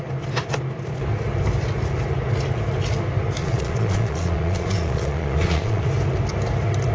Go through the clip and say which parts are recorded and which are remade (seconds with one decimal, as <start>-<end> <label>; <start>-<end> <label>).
0.0-3.4 recorded; 3.4-5.9 remade; 5.9-6.9 recorded